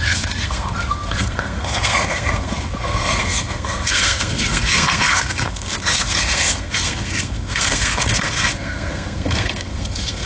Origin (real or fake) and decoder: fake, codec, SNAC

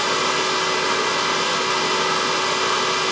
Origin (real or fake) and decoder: real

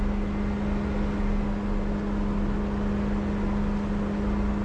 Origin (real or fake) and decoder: real